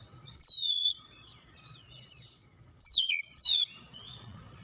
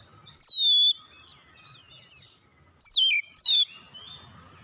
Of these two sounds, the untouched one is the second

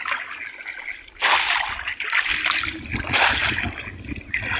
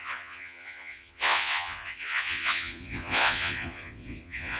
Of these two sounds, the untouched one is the first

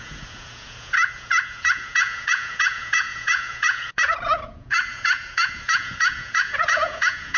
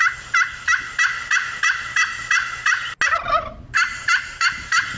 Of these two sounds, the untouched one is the second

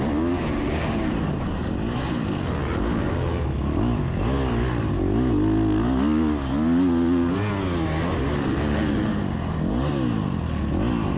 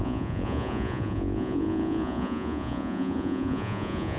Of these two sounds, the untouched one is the first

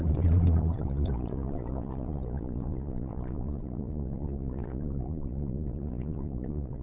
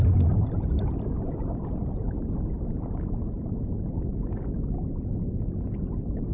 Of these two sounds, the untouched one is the second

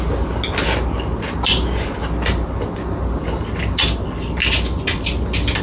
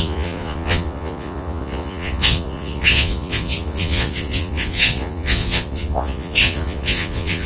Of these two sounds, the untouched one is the first